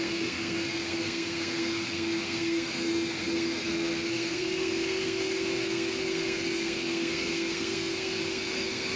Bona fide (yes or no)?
no